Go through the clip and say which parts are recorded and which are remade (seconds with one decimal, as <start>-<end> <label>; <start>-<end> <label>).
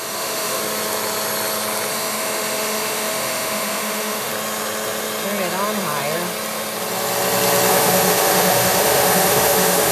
0.0-0.6 remade; 0.6-1.9 recorded; 1.9-4.3 remade; 4.3-7.7 recorded; 7.7-9.9 remade